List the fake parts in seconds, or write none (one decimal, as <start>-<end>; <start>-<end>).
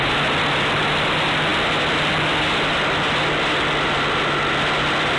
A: none